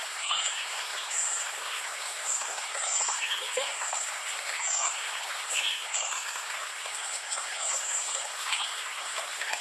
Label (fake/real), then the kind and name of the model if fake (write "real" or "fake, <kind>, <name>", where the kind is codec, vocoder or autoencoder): fake, codec, SNAC